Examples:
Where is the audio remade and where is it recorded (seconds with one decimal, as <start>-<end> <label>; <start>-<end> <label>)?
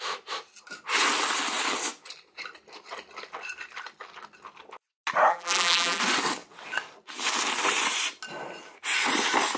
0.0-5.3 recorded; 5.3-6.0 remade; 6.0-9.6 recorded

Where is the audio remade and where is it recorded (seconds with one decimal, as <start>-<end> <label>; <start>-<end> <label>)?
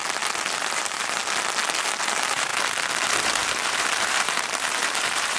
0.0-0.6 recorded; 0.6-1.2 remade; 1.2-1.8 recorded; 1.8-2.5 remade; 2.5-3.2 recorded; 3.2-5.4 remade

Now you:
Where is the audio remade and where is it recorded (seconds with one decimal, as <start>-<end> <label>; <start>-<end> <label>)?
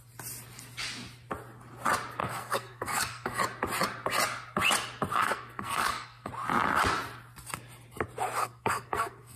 0.0-2.2 recorded; 2.2-3.4 remade; 3.4-5.2 recorded; 5.2-6.3 remade; 6.3-8.4 recorded; 8.4-9.4 remade